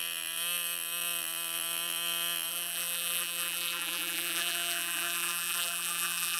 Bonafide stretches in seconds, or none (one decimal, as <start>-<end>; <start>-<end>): 0.0-2.5